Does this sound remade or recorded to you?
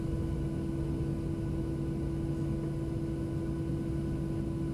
recorded